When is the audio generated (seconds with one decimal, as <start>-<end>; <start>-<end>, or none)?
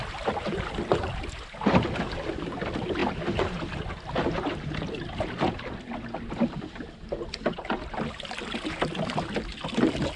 none